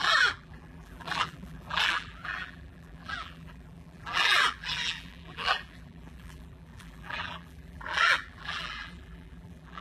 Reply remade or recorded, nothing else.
remade